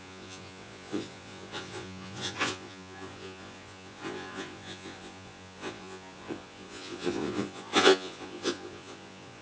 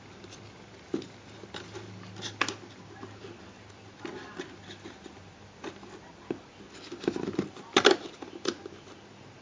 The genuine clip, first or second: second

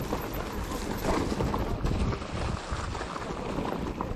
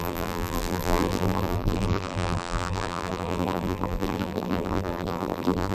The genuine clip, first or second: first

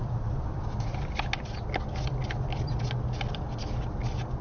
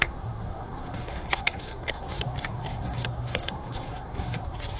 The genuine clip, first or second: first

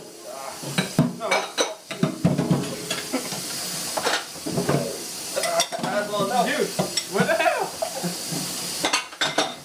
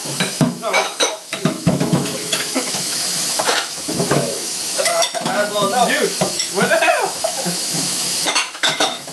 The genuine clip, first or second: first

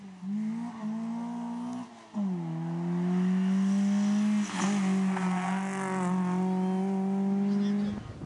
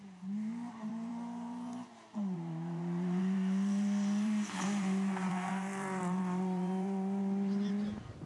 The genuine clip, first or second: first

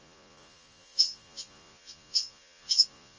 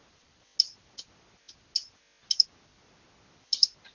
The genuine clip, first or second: second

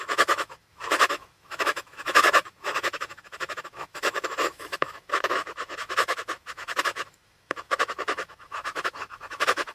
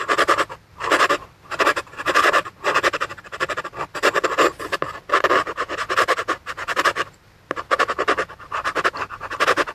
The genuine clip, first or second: second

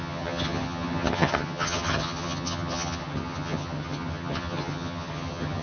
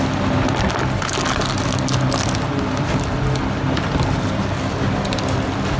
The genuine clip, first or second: second